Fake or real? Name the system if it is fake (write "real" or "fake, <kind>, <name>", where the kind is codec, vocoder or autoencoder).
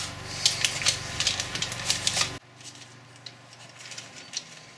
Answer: real